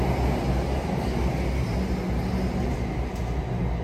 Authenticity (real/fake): real